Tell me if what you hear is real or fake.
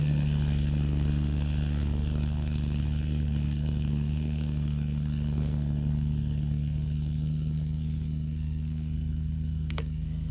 fake